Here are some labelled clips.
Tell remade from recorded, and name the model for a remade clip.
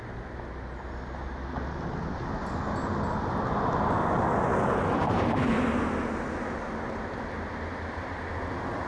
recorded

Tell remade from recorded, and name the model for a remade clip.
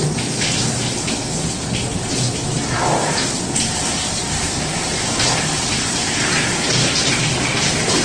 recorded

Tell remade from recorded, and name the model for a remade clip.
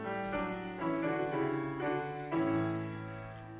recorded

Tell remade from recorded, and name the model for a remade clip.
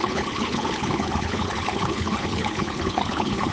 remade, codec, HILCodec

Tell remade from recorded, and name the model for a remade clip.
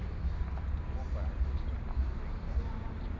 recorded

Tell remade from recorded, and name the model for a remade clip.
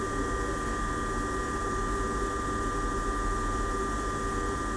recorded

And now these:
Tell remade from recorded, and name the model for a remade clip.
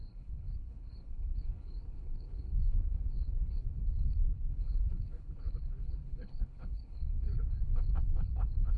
remade, codec, HILCodec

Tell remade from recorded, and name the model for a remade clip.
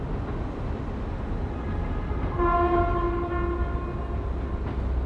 recorded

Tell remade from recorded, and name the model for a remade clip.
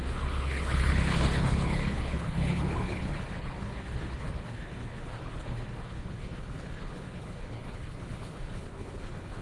remade, codec, HILCodec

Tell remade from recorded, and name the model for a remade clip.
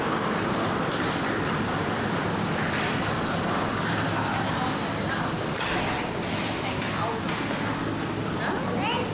recorded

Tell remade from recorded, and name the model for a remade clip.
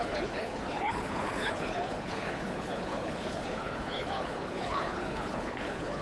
remade, codec, HILCodec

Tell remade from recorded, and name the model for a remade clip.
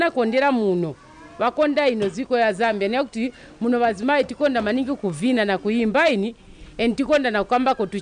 recorded